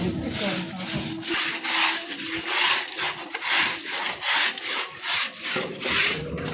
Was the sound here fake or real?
real